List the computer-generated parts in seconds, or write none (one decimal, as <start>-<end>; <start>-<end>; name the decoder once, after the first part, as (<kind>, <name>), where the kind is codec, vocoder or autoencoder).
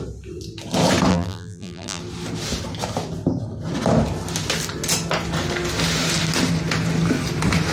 1.1-2.0 (vocoder, BigVGAN v2)